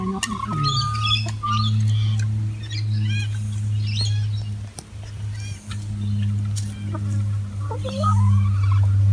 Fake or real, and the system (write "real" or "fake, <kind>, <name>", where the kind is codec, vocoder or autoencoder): real